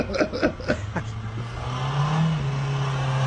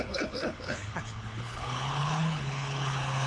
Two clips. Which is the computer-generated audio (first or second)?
second